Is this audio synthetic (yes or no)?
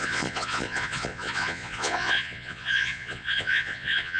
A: yes